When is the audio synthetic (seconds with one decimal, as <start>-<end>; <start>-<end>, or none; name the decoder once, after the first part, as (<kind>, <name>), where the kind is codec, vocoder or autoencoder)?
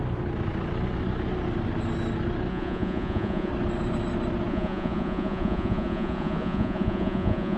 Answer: 2.5-3.5 (vocoder, Vocos); 4.5-7.6